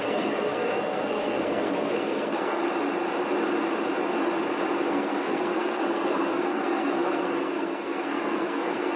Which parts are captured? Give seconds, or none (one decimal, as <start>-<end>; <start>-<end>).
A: 2.6-4.9